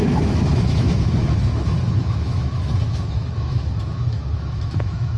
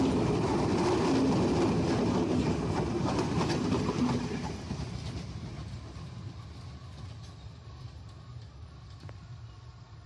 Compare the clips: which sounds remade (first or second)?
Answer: first